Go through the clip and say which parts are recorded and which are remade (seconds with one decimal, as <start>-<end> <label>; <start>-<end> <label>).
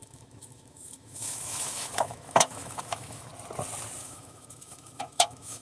0.0-3.3 remade; 3.3-4.0 recorded; 4.0-5.6 remade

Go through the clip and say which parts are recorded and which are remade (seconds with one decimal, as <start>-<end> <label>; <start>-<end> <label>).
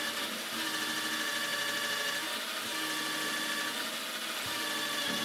0.0-5.2 recorded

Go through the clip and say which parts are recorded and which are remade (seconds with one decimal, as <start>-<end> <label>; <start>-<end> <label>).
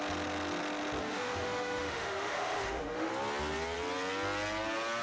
0.0-1.0 recorded; 1.0-3.1 remade; 3.1-5.0 recorded